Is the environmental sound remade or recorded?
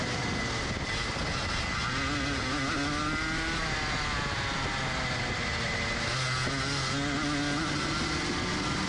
recorded